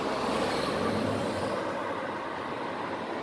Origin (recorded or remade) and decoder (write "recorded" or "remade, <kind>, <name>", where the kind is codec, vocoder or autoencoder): recorded